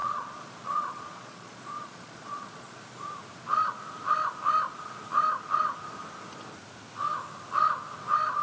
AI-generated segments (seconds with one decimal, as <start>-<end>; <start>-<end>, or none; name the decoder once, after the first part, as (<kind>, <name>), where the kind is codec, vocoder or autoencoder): 0.0-2.8 (vocoder, Vocos)